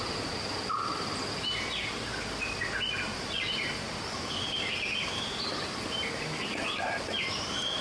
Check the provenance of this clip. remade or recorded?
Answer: recorded